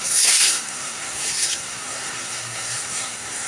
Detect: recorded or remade remade